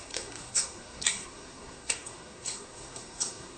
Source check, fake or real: fake